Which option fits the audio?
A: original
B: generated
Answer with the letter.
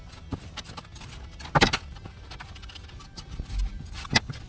A